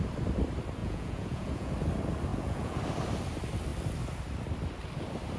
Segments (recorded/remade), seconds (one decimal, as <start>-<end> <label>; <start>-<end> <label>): 0.0-0.8 recorded; 0.8-1.7 remade; 1.7-2.3 recorded; 2.3-2.8 remade; 2.8-5.4 recorded